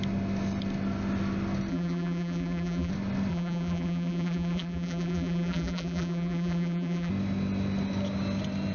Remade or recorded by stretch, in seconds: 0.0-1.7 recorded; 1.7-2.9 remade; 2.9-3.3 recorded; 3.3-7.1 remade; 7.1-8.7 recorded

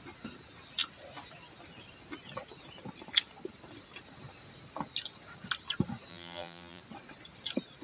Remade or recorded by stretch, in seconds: 0.0-6.1 recorded; 6.1-6.8 remade; 6.8-7.8 recorded

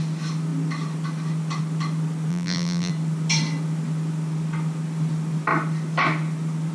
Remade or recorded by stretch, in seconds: 0.0-2.3 recorded; 2.3-2.9 remade; 2.9-6.7 recorded

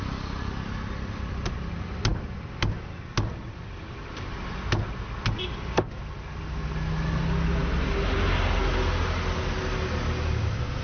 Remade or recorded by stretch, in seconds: 0.0-10.8 recorded